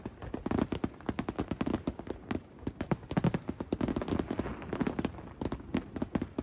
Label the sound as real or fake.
real